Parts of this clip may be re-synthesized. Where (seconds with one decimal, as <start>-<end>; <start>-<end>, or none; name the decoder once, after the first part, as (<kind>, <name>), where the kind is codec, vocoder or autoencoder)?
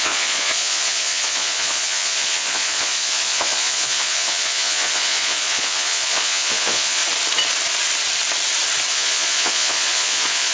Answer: 0.0-7.0 (vocoder, Vocos); 8.9-10.5